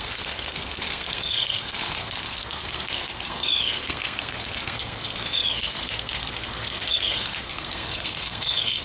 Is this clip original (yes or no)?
no